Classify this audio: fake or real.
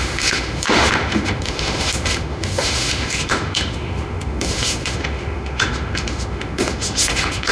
fake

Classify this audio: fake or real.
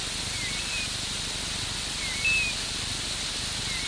real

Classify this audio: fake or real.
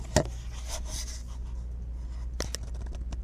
real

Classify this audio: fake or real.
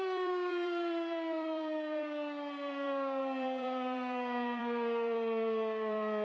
fake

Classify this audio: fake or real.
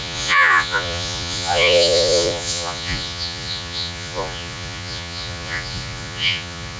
fake